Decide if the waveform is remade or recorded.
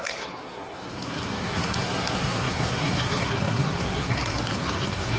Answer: remade